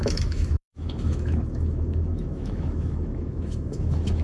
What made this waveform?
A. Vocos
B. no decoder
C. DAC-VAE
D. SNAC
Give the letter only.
C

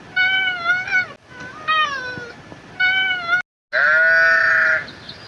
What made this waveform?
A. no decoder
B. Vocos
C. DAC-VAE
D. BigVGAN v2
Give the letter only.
A